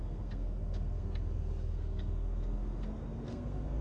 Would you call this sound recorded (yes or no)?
no